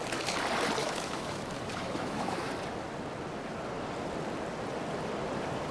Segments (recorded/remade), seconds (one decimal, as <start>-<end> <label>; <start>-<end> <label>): 0.0-0.8 recorded; 0.8-2.5 remade; 2.5-5.7 recorded